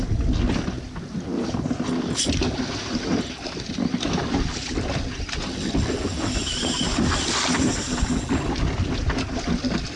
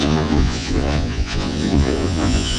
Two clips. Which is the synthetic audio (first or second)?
second